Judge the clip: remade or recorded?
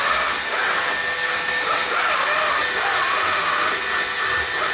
recorded